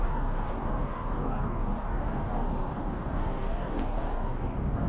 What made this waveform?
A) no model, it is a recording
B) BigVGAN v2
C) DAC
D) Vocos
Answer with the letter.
C